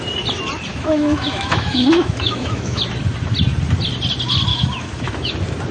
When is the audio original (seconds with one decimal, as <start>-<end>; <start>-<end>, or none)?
0.0-0.7; 2.8-4.5; 5.3-5.7